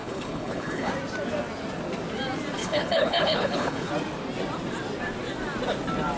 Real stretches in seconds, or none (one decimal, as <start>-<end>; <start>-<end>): 0.9-2.6; 3.9-6.2